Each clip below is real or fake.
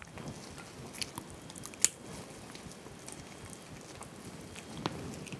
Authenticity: real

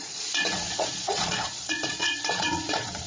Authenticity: fake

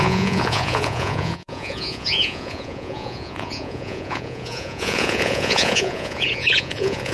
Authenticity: fake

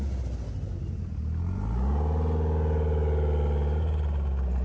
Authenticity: real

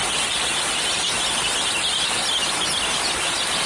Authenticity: real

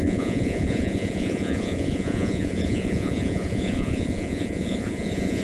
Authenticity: fake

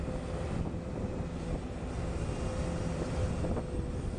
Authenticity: real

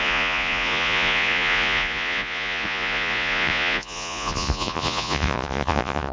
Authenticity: fake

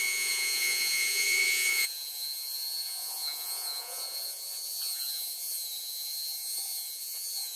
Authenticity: fake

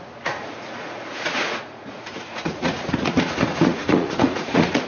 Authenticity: fake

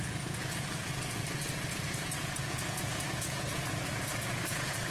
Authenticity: fake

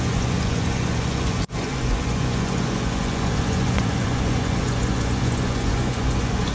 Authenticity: fake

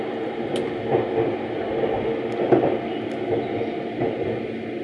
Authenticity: real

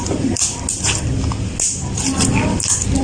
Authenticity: real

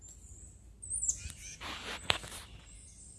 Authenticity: real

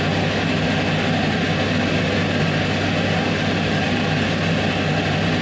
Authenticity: real